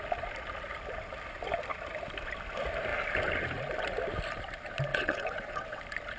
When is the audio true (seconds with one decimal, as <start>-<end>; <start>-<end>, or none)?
0.0-4.9; 5.8-6.2